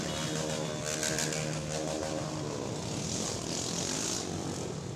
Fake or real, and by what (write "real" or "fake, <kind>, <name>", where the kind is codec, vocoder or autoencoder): real